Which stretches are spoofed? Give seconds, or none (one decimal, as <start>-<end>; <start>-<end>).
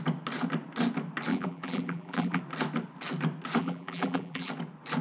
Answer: 1.3-2.4; 3.6-4.5